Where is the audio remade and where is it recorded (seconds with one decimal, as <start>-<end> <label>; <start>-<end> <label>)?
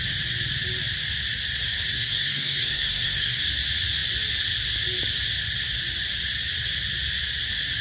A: 0.0-1.9 recorded; 1.9-3.4 remade; 3.4-7.8 recorded